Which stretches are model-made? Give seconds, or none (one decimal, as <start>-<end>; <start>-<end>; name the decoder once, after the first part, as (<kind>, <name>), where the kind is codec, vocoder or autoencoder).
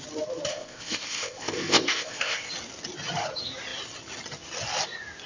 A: 0.5-2.5 (codec, ZipCodec)